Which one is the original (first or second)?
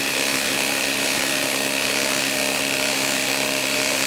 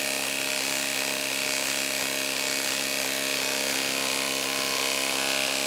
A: second